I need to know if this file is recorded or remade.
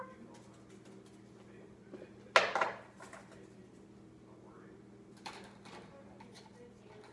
recorded